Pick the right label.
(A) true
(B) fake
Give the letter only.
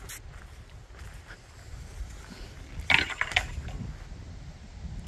A